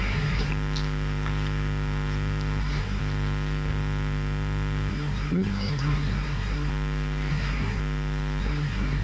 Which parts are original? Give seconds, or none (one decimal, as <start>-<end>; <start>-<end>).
0.5-2.6; 3.0-4.9; 6.7-7.3; 7.8-8.4